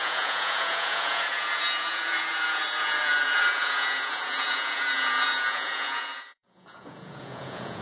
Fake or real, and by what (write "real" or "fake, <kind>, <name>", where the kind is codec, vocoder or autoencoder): fake, vocoder, Vocos